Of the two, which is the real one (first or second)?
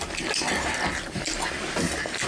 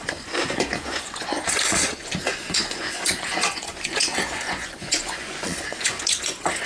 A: first